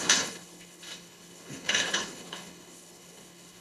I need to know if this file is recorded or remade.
remade